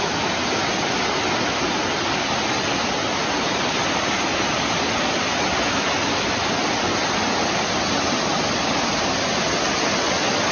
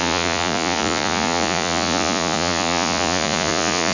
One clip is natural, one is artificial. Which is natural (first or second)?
first